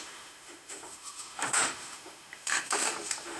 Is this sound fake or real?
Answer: fake